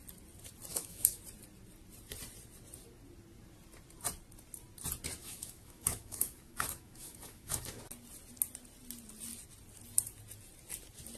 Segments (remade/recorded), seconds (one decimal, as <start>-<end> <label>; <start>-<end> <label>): 0.0-0.7 recorded; 0.7-1.2 remade; 1.2-5.2 recorded; 5.2-7.8 remade; 7.8-11.2 recorded